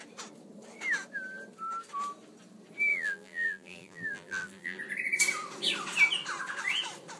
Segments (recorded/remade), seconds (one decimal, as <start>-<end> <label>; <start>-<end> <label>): 0.0-2.9 recorded; 2.9-4.8 remade; 4.8-7.2 recorded